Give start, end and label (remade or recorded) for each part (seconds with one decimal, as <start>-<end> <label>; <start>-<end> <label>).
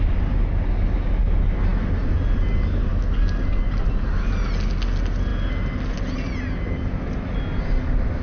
0.0-8.2 recorded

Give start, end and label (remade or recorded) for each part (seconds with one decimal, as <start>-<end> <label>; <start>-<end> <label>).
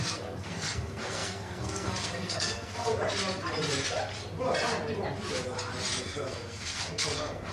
0.0-2.9 remade; 2.9-6.0 recorded; 6.0-7.5 remade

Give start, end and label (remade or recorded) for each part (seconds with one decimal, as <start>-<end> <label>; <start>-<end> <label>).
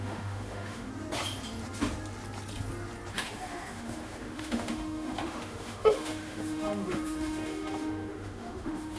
0.0-0.9 remade; 0.9-3.1 recorded; 3.1-9.0 remade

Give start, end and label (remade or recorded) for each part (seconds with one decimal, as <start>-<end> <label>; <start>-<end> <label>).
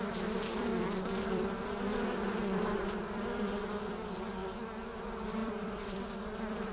0.0-0.7 remade; 0.7-1.3 recorded; 1.3-4.4 remade; 4.4-5.0 recorded; 5.0-6.7 remade